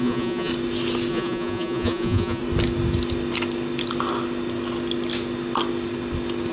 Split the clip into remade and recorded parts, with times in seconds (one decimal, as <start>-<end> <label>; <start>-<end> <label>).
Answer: 0.0-0.5 remade; 0.5-1.1 recorded; 1.1-2.4 remade; 2.4-6.5 recorded